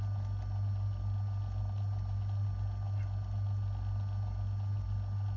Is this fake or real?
real